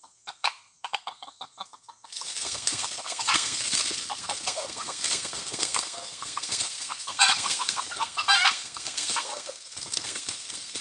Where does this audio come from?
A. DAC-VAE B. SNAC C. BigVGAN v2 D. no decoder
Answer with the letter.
B